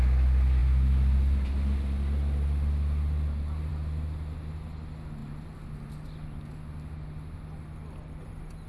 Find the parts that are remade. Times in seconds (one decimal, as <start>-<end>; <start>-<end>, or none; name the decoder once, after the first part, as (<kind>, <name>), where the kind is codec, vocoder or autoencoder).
none